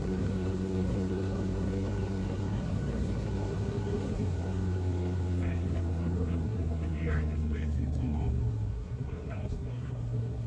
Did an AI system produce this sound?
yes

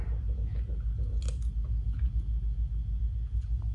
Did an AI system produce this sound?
no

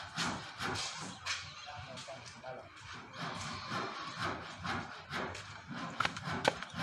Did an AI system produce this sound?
no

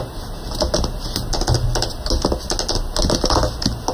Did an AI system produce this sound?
no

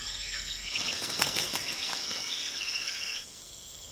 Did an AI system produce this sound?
yes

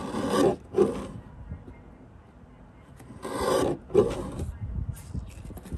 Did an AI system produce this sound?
no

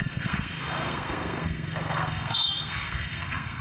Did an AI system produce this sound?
yes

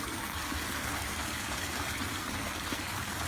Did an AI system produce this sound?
yes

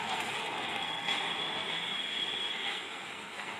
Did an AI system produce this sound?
yes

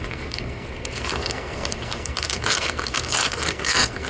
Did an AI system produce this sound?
yes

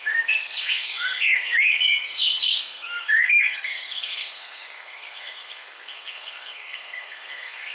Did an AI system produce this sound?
yes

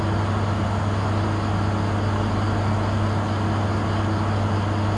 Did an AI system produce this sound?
no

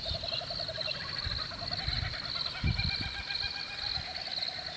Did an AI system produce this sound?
no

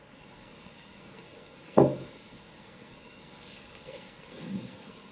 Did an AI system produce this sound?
yes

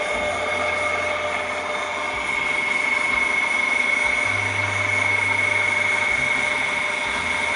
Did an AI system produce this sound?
no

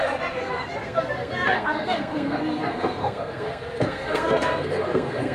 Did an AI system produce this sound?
yes